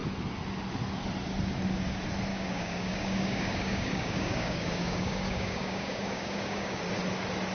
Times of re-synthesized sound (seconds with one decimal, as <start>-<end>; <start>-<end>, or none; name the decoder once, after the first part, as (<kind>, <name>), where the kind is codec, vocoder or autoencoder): 2.3-6.8 (codec, DAC)